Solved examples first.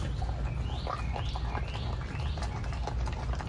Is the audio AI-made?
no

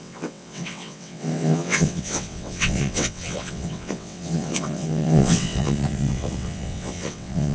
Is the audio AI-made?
yes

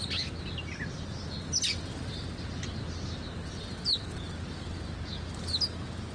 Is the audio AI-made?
no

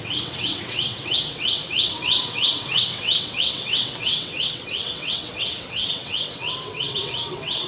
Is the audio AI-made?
yes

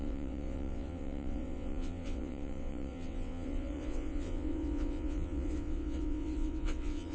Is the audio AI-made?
yes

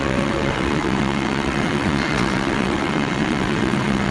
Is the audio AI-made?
yes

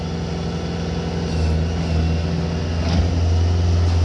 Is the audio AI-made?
no